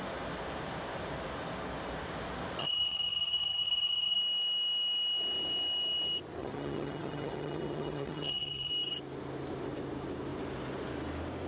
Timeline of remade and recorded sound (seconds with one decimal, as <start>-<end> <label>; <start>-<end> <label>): 0.0-2.6 recorded; 2.6-4.2 remade; 4.2-6.4 recorded; 6.4-8.7 remade; 8.7-11.5 recorded